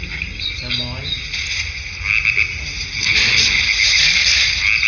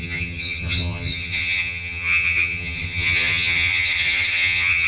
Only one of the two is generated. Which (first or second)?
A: second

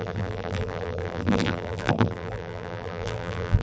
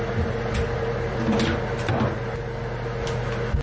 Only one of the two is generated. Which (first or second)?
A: first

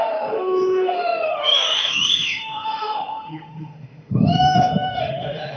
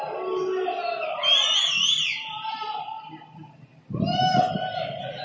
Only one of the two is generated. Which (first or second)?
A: first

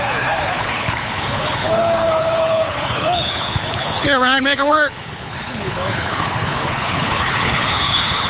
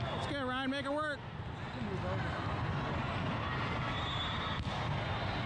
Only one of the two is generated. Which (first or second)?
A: first